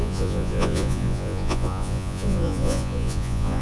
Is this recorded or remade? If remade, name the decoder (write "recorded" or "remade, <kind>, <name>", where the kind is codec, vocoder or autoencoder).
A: remade, vocoder, Vocos